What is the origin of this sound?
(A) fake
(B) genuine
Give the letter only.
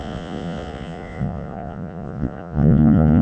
A